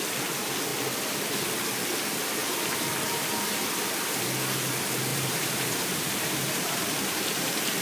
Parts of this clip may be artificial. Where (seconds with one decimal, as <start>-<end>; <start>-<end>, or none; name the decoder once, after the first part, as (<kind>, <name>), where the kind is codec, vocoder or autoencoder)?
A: 2.4-3.4 (vocoder, BigVGAN v2); 5.1-7.8